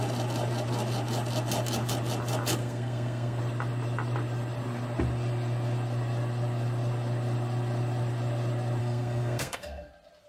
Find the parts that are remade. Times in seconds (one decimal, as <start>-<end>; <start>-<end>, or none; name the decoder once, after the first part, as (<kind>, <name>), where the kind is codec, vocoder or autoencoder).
2.6-3.4 (codec, SNAC); 8.8-9.9